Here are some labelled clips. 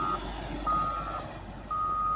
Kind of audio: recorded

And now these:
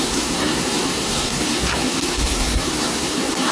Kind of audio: remade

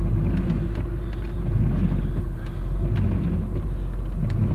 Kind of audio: recorded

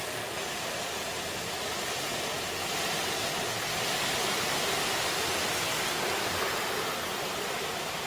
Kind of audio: recorded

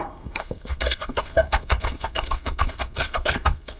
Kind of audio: remade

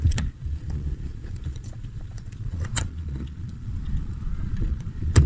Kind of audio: remade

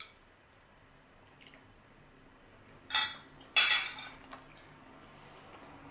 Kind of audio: recorded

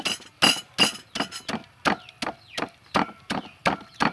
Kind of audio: recorded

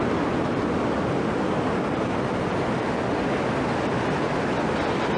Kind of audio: recorded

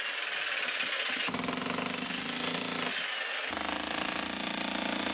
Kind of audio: recorded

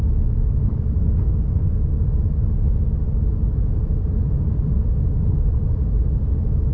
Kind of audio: recorded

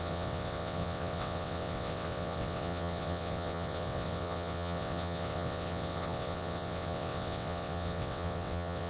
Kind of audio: remade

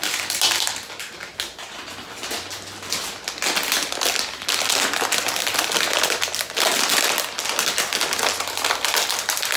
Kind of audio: recorded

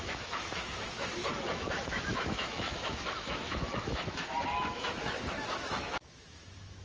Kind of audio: remade